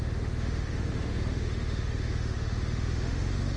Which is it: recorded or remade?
remade